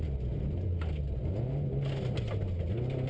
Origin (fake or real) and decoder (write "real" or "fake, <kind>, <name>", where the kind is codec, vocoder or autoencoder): real